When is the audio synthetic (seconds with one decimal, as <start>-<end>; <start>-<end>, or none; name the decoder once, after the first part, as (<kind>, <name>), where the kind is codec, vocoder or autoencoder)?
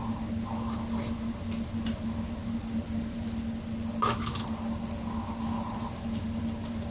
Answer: none